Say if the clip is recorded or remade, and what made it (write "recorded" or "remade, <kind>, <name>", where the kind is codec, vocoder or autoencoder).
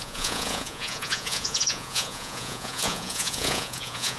remade, vocoder, Vocos